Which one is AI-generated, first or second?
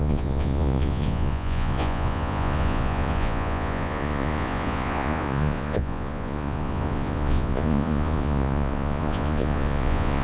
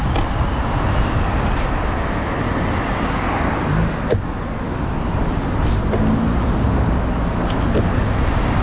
first